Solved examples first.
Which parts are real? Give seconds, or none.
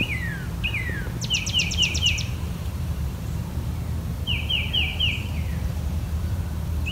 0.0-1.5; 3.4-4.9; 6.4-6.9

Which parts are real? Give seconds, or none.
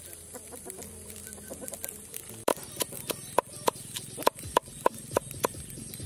none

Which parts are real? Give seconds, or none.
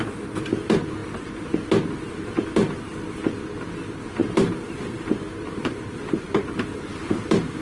0.0-4.2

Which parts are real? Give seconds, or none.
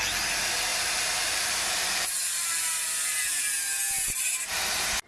0.0-0.7; 3.8-5.1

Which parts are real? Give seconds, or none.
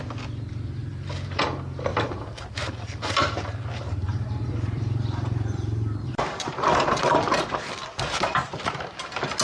0.0-0.8; 1.4-1.9; 7.1-9.4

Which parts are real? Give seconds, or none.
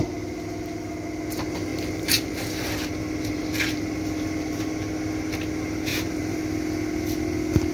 0.0-1.7; 4.6-5.9; 6.4-7.7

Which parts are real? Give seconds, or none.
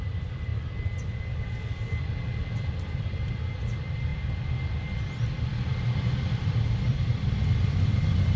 0.5-3.2; 4.1-5.8